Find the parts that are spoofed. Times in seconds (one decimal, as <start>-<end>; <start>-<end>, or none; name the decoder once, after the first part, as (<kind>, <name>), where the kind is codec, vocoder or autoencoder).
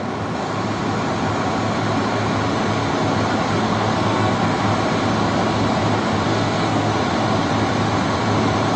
3.6-4.6 (codec, SNAC); 6.3-6.9